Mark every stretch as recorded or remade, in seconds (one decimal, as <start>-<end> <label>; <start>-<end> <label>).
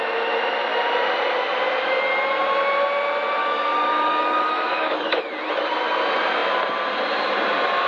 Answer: 0.0-3.4 recorded; 3.4-5.2 remade; 5.2-7.9 recorded